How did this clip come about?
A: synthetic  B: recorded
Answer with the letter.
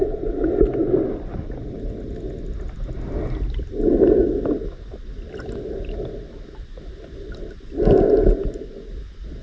B